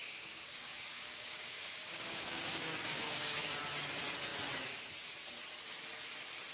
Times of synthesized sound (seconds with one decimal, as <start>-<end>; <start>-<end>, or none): 0.0-3.5